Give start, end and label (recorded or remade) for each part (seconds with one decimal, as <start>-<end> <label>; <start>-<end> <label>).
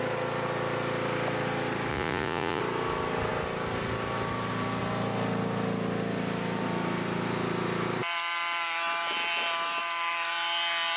0.0-1.9 recorded; 1.9-2.6 remade; 2.6-11.0 recorded